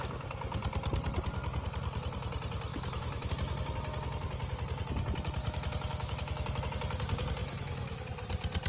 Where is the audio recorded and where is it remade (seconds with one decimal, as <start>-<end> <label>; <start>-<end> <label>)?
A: 0.0-2.7 recorded; 2.7-3.3 remade; 3.3-5.4 recorded; 5.4-6.6 remade; 6.6-7.4 recorded; 7.4-8.0 remade; 8.0-8.7 recorded